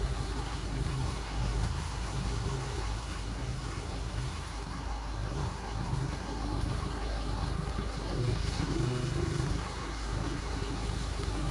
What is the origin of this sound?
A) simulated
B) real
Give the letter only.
A